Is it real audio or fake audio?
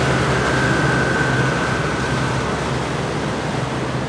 real